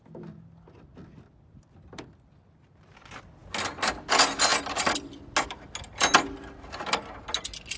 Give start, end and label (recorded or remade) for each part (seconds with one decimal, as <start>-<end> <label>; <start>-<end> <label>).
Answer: 0.0-7.8 recorded